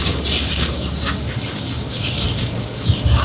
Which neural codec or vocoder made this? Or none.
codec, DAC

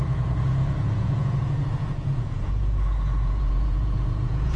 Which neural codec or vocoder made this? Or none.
vocoder, Vocos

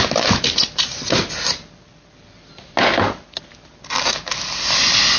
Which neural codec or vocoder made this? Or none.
none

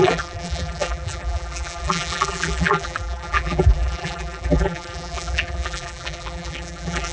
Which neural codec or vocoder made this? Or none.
vocoder, BigVGAN v2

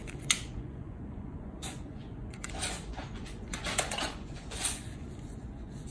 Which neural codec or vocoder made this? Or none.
vocoder, Vocos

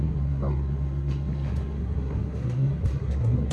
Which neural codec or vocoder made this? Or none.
codec, SNAC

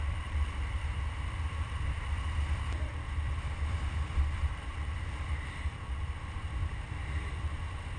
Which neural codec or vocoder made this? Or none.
vocoder, BigVGAN v2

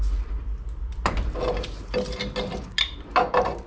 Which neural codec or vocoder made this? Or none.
none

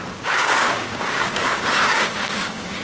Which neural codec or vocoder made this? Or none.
codec, DAC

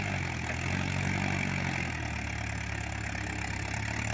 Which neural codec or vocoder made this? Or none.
none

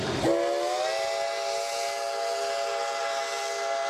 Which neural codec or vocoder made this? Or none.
none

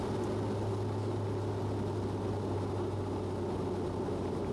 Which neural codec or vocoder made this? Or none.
none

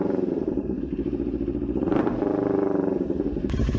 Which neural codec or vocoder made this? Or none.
vocoder, BigVGAN v2